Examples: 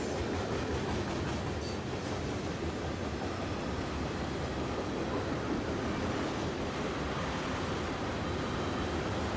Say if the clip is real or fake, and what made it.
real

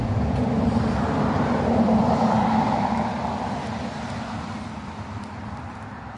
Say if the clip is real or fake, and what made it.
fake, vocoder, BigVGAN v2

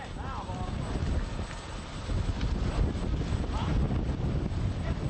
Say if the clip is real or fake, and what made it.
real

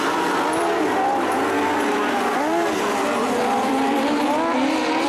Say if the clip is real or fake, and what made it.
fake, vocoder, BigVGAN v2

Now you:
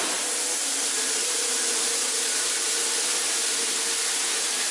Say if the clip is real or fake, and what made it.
real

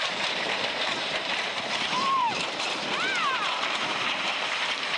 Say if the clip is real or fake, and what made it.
fake, vocoder, BigVGAN v2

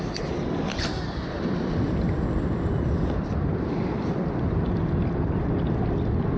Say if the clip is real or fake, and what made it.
fake, vocoder, BigVGAN v2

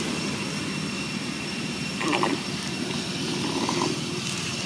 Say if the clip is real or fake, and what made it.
real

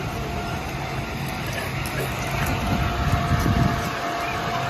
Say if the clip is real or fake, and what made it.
fake, vocoder, BigVGAN v2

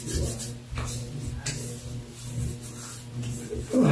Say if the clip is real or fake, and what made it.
real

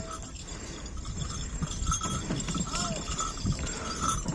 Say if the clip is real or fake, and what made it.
real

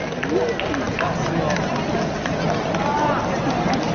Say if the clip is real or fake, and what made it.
real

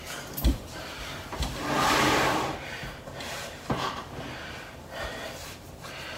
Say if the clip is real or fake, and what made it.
fake, vocoder, BigVGAN v2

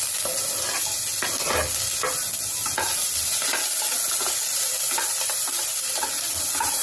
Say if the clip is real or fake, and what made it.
real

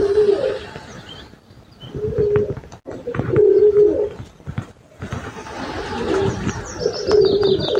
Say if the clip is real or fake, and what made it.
real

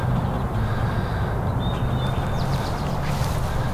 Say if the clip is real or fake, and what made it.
real